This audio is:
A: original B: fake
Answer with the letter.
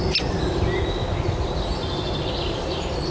A